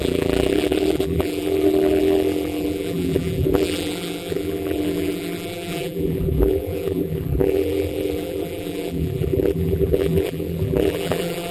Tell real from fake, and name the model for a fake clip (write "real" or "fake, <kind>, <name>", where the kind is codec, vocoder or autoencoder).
fake, vocoder, BigVGAN v2